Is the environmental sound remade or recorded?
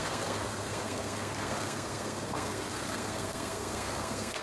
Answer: remade